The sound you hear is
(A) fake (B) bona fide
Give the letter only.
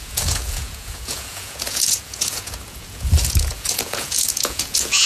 A